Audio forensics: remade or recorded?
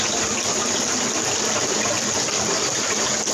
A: recorded